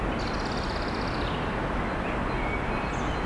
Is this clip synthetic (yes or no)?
no